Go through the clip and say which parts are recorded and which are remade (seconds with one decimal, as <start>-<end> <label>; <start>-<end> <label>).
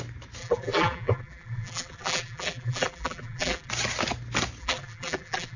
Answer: 0.0-0.4 recorded; 0.4-3.7 remade; 3.7-4.6 recorded; 4.6-5.6 remade